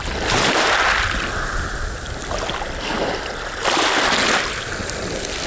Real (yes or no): yes